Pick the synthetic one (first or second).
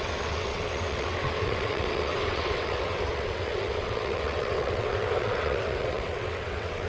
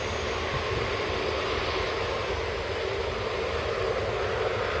first